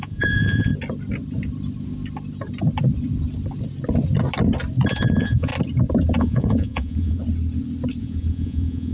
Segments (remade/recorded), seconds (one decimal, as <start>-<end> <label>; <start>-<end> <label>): 0.0-0.7 remade; 0.7-4.9 recorded; 4.9-5.5 remade; 5.5-6.2 recorded; 6.2-7.2 remade; 7.2-8.0 recorded; 8.0-8.9 remade